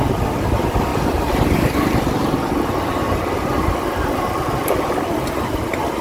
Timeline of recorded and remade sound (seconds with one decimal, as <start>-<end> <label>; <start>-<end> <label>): 0.0-6.0 recorded